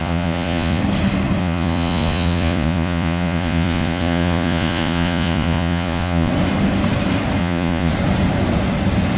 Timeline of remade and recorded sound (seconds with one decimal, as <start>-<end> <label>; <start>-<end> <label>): 0.0-0.8 remade; 0.8-1.4 recorded; 1.4-6.3 remade; 6.3-7.4 recorded; 7.4-7.9 remade; 7.9-9.2 recorded